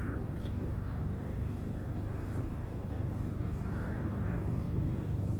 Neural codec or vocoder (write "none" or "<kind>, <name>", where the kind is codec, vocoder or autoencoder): codec, DAC